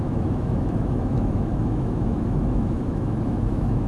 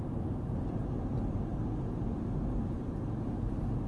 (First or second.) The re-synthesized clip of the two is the first